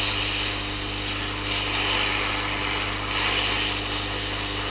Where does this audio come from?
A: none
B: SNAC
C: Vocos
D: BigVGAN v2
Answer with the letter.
A